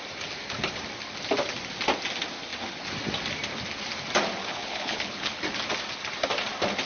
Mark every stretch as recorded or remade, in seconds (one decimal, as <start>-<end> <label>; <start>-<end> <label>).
0.0-4.4 recorded; 4.4-5.4 remade; 5.4-6.9 recorded